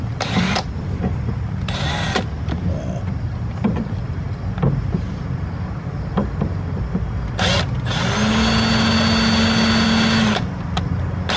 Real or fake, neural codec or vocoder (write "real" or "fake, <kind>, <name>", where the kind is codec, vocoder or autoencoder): real